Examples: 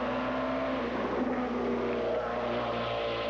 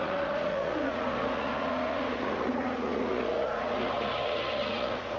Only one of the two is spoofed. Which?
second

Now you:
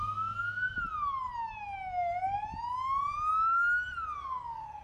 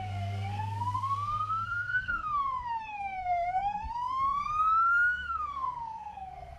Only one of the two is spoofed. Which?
second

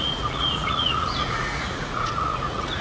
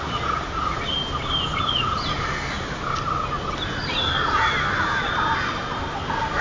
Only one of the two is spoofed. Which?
first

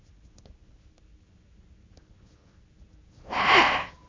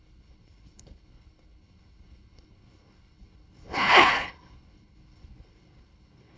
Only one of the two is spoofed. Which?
second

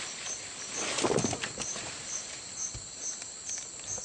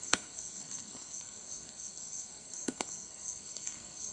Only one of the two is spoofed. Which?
second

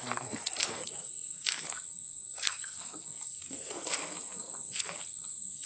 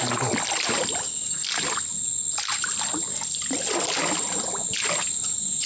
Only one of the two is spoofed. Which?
first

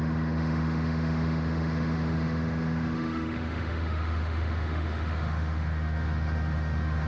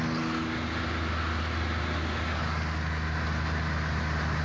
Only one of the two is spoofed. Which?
first